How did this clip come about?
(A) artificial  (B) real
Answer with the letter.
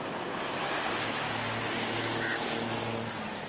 B